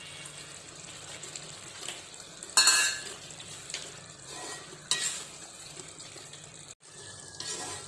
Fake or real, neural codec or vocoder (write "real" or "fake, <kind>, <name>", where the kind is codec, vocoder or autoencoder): real